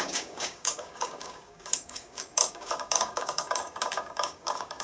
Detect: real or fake fake